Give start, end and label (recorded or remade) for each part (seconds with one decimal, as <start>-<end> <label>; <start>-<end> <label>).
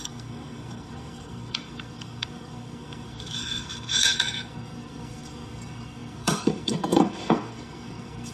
0.0-8.3 remade